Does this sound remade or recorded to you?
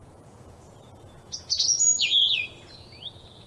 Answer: remade